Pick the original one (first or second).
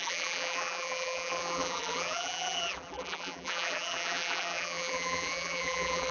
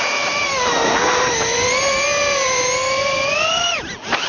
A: second